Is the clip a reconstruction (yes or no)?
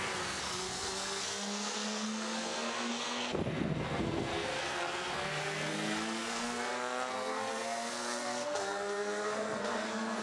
yes